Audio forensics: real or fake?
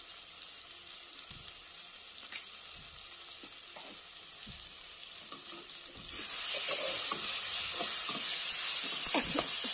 real